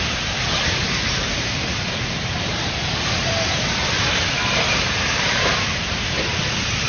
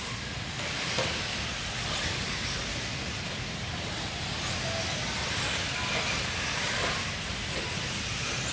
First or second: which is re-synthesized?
first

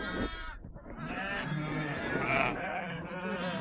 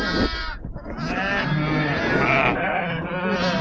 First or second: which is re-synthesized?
first